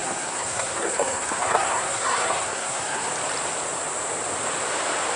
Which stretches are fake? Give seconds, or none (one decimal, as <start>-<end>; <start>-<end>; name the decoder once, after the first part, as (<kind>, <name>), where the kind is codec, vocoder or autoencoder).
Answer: 0.0-3.1 (codec, SNAC)